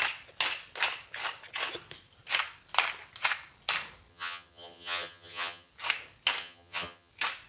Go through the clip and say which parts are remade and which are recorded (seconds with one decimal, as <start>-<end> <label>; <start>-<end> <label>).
0.0-4.1 recorded; 4.1-5.7 remade; 5.7-6.4 recorded; 6.4-7.1 remade; 7.1-7.5 recorded